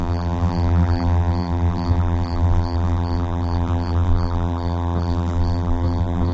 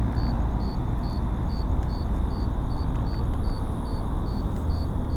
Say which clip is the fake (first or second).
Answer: first